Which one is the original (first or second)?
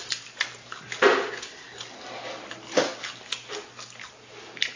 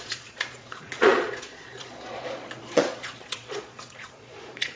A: first